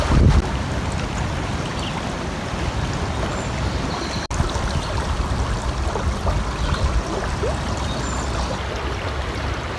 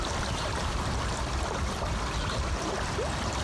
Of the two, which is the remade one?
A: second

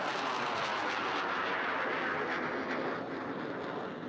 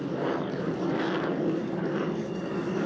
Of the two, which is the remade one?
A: second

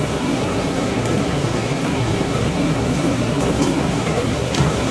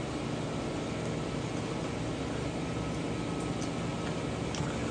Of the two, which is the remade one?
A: first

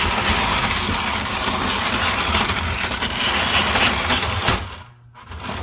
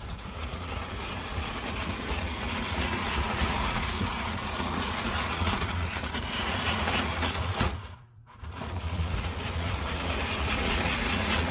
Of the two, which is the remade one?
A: second